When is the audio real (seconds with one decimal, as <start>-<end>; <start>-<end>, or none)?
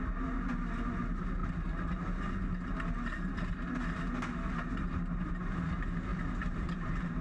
0.0-6.1